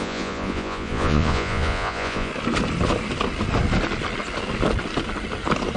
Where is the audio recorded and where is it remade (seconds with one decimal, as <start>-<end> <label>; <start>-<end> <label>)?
0.0-2.3 remade; 2.3-5.8 recorded